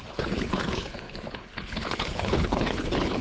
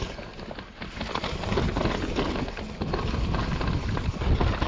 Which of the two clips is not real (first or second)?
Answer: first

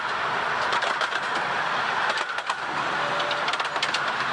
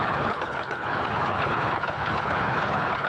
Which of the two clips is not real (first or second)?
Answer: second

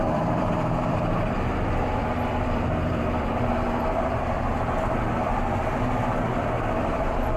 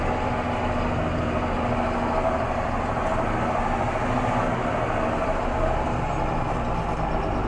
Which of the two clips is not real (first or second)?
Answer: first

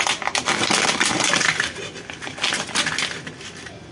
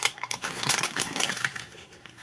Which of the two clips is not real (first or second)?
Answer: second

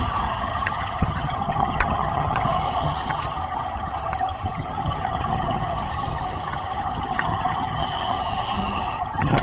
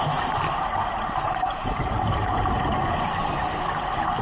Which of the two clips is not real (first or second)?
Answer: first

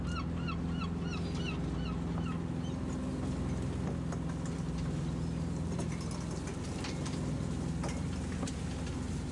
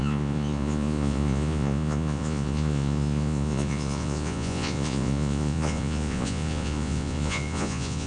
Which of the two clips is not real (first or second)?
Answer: second